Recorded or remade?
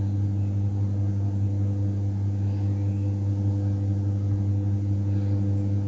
recorded